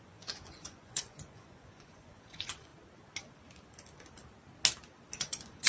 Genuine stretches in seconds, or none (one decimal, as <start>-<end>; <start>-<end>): 2.7-5.2